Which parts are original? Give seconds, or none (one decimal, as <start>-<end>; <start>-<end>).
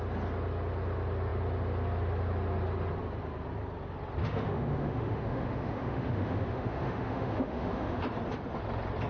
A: 0.0-4.2; 8.0-9.1